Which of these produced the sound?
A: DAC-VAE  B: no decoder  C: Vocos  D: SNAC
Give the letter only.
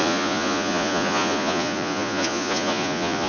C